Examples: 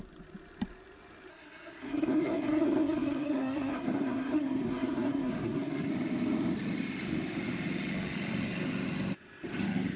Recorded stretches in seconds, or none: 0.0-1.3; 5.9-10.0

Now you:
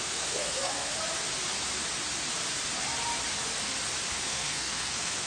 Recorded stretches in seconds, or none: 0.9-4.1

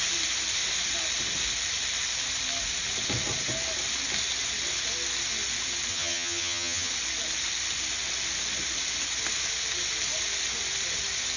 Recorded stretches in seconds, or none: 0.0-5.9; 6.9-11.4

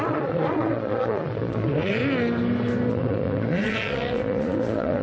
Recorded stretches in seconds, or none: 2.0-2.9

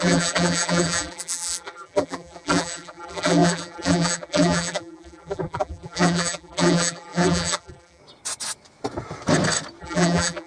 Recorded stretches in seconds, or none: 8.0-9.8